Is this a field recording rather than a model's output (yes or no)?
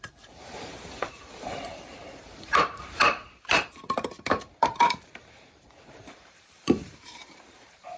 no